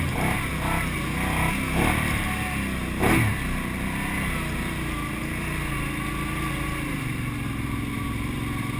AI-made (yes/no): no